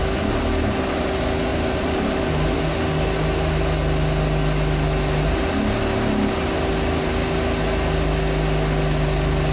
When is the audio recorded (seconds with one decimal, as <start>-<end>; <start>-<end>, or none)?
0.0-1.5; 2.1-9.5